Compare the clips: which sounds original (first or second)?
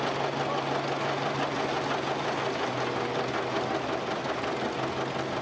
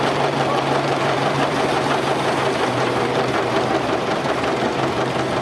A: first